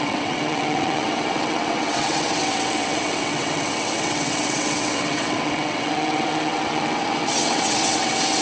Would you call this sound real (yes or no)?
no